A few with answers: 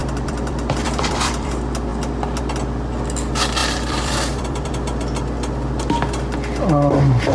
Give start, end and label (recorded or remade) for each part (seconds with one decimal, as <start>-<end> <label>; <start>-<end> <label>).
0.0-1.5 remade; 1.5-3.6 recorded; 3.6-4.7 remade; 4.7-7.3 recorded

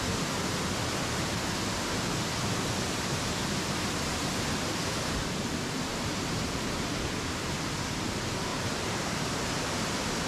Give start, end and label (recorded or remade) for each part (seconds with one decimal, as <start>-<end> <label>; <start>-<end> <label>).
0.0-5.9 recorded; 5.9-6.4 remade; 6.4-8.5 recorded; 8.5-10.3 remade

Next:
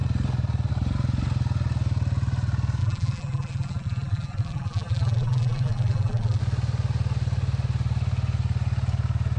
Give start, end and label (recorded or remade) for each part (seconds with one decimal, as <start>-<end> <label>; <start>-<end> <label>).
0.0-2.8 recorded; 2.8-6.4 remade; 6.4-9.4 recorded

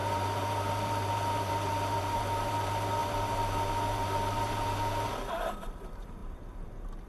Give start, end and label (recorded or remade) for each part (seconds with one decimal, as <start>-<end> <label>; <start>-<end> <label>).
0.0-7.1 remade